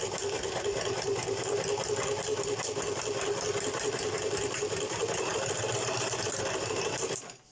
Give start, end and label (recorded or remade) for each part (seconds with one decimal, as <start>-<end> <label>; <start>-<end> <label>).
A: 0.0-7.5 recorded